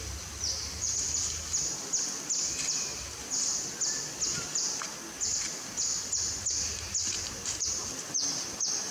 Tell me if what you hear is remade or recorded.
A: recorded